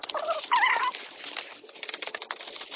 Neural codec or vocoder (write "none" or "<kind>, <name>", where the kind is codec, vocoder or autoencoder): none